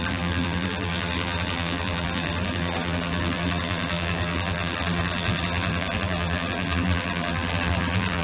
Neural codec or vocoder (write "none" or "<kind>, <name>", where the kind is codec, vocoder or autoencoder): vocoder, BigVGAN v2